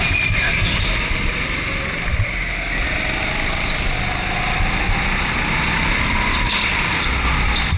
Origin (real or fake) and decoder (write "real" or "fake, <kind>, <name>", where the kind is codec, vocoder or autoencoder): real